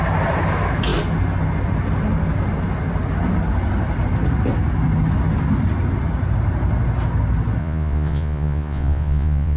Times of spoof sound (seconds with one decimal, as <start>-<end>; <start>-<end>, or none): 7.6-9.6